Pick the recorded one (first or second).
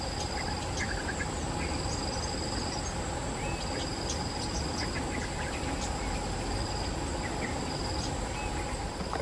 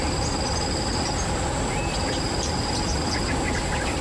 first